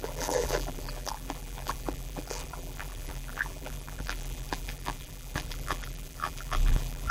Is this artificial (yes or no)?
yes